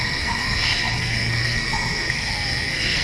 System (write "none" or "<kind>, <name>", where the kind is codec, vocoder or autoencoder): codec, SNAC